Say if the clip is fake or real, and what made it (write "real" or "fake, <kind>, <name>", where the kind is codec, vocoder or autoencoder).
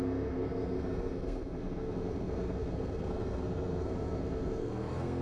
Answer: fake, codec, SNAC